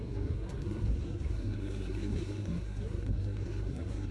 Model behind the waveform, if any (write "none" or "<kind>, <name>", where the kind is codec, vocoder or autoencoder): codec, SNAC